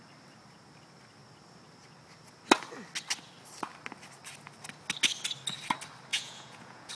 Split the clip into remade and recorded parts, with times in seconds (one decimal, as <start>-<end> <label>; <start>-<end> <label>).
0.0-6.1 recorded; 6.1-6.9 remade